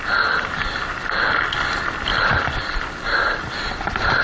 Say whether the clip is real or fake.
real